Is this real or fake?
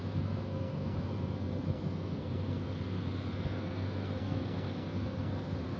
fake